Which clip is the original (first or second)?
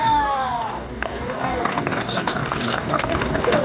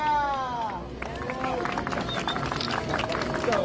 second